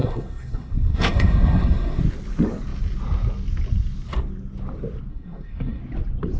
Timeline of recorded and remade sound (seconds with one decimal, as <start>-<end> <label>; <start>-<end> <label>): 0.0-2.0 remade; 2.0-5.1 recorded; 5.1-5.8 remade; 5.8-6.4 recorded